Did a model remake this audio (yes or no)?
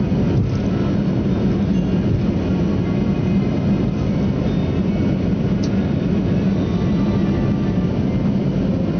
no